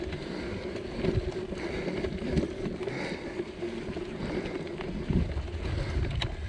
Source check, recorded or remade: recorded